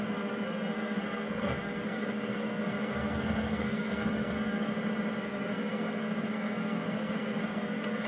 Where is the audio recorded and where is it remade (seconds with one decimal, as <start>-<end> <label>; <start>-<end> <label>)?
0.0-4.7 remade; 4.7-5.2 recorded; 5.2-8.1 remade